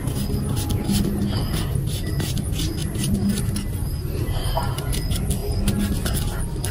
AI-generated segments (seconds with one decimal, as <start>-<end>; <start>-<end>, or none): 2.8-3.3; 3.8-4.8